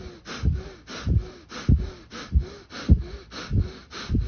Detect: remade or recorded recorded